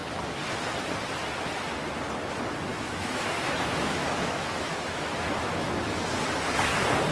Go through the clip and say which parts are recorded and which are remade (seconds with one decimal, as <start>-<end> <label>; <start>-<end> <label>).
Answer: 0.0-2.7 recorded; 2.7-6.0 remade; 6.0-7.1 recorded